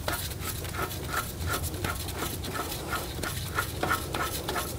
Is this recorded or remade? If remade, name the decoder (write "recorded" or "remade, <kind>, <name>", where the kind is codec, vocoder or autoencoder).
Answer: remade, vocoder, BigVGAN v2